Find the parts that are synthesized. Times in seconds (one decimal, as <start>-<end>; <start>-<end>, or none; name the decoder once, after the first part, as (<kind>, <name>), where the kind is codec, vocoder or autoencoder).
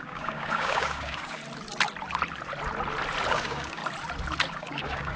0.0-1.4 (codec, DAC); 3.3-3.8; 4.5-5.2